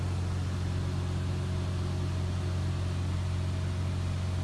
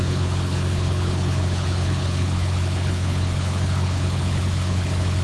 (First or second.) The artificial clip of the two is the second